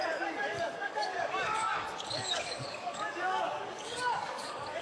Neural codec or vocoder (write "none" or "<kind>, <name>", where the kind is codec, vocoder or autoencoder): codec, DAC